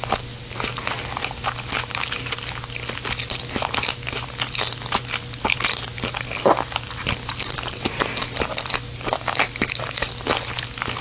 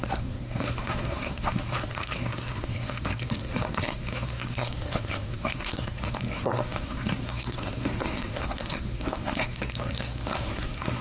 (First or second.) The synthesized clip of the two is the second